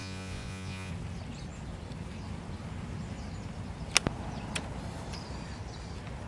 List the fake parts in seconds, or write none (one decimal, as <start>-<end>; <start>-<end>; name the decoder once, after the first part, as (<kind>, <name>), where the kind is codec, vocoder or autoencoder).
0.0-0.9 (vocoder, Vocos)